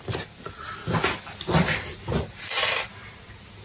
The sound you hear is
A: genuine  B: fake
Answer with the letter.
A